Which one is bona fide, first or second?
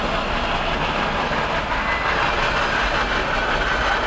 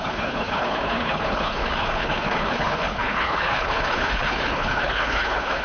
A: first